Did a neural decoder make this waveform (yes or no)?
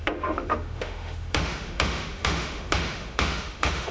yes